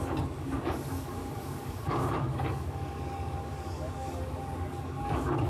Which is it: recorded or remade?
remade